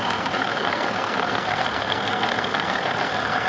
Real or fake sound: fake